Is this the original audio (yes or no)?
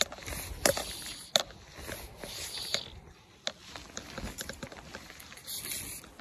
yes